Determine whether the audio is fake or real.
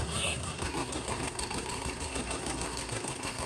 fake